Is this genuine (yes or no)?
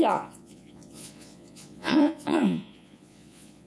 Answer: no